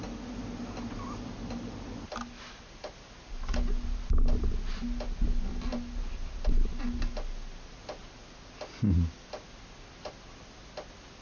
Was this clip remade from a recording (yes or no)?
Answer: no